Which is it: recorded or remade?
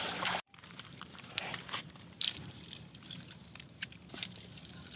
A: remade